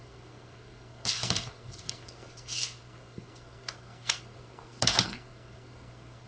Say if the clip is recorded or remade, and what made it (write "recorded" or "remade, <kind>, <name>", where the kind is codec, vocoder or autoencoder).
remade, codec, SNAC